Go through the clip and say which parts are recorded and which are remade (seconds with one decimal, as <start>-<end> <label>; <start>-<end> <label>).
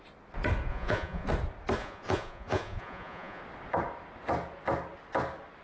0.0-0.7 recorded; 0.7-1.3 remade; 1.3-1.8 recorded; 1.8-3.4 remade; 3.4-5.6 recorded